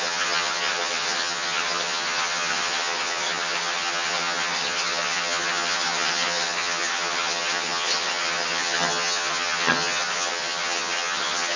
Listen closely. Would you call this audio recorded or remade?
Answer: remade